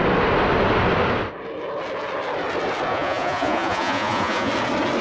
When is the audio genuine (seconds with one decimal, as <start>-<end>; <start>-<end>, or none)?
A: 0.0-2.9; 4.5-5.0